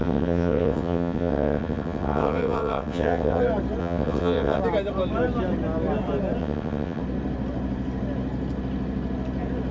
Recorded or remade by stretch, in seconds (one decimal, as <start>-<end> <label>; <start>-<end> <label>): 0.0-3.4 remade; 3.4-3.8 recorded; 3.8-4.6 remade; 4.6-6.4 recorded; 6.4-7.0 remade; 7.0-9.7 recorded